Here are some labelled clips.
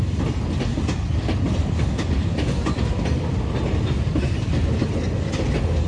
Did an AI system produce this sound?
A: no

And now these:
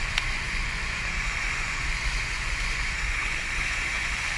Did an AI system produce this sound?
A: yes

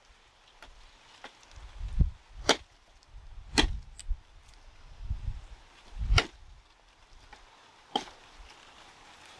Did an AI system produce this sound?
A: no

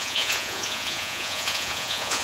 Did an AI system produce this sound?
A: yes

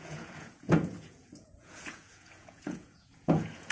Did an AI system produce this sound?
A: yes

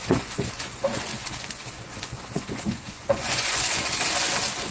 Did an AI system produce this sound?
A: yes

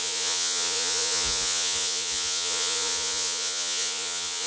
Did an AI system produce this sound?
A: yes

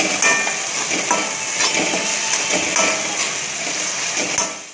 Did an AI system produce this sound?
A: no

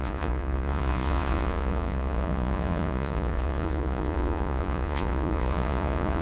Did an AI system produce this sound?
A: yes